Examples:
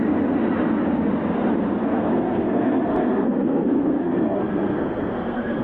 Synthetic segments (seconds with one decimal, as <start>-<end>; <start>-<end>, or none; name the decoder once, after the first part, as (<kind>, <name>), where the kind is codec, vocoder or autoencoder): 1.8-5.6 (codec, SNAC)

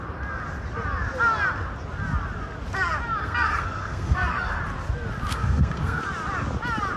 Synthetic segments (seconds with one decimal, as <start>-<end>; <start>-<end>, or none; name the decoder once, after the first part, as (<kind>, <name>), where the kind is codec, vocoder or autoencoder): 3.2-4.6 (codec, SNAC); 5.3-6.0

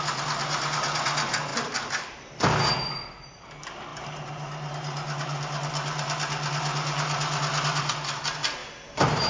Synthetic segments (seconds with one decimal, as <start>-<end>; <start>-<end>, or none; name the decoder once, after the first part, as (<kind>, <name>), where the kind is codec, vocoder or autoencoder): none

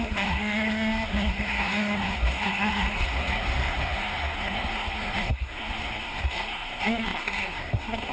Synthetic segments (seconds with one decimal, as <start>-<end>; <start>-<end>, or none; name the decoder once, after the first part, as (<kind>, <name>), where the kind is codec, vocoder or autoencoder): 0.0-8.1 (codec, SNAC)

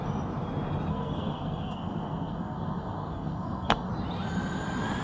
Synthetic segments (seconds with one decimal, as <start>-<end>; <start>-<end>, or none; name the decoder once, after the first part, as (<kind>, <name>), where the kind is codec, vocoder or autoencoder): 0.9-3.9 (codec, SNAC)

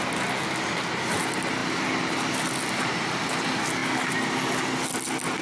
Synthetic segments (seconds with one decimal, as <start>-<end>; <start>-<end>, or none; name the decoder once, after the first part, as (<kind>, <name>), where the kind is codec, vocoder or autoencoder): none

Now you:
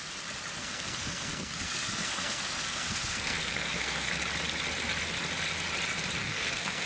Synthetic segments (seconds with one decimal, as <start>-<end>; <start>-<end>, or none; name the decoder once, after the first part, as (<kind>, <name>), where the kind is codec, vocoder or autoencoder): 0.6-4.1 (codec, SNAC); 6.2-6.9

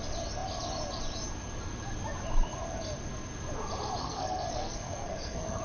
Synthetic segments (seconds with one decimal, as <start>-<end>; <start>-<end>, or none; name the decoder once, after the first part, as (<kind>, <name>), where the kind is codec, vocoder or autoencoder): 4.0-5.6 (codec, SNAC)